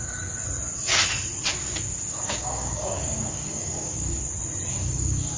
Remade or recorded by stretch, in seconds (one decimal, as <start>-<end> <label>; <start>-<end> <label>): 0.0-2.1 recorded; 2.1-4.2 remade; 4.2-4.7 recorded; 4.7-5.4 remade